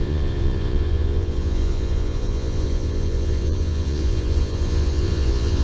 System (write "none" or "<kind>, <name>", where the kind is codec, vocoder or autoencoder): vocoder, Vocos